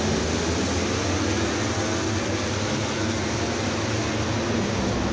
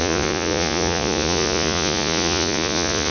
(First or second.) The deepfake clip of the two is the second